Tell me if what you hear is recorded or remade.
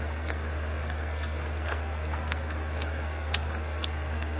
remade